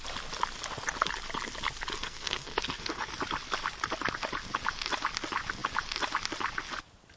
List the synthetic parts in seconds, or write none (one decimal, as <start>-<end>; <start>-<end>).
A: 1.9-3.1